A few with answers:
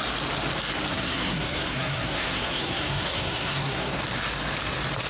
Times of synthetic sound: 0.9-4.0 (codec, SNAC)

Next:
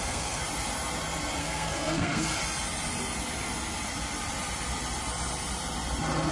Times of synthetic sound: 0.0-0.4 (codec, SNAC); 1.4-2.4